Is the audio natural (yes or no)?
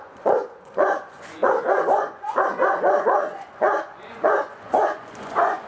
no